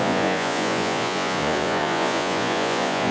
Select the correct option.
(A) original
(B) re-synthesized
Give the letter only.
B